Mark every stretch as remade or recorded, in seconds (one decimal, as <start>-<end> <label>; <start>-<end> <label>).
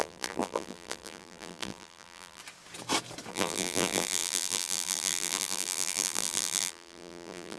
0.0-2.4 remade; 2.4-3.3 recorded; 3.3-7.6 remade